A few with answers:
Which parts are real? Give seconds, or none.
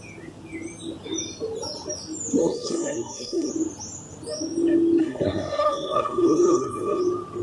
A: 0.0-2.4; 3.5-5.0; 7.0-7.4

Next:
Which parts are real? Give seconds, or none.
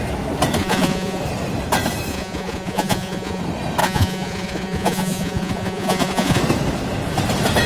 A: 0.0-0.6; 1.2-2.1; 3.4-3.8; 6.4-7.7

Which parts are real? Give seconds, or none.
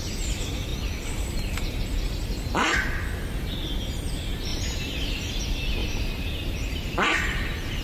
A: 0.0-4.5; 5.3-5.8; 6.3-7.8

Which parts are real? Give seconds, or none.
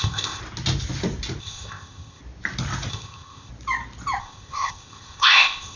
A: 0.4-1.4; 2.2-2.9; 3.5-4.2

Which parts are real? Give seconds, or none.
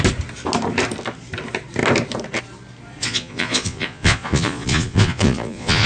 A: 0.0-3.0